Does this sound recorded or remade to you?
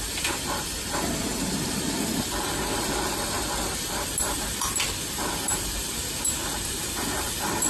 remade